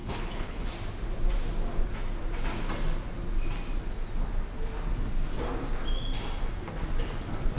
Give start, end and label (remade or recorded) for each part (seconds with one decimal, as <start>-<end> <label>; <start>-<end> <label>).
0.0-0.7 remade; 0.7-7.6 recorded